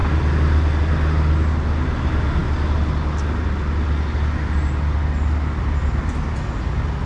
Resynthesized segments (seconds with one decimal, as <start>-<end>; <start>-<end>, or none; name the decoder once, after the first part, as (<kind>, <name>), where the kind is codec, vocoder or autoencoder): none